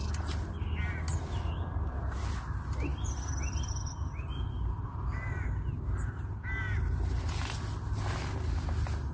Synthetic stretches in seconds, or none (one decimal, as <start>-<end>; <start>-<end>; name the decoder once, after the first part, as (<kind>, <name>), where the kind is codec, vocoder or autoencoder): none